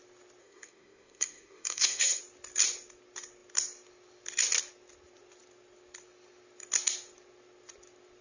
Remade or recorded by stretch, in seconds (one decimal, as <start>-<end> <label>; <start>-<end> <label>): 0.0-0.4 recorded; 0.4-2.2 remade; 2.2-8.2 recorded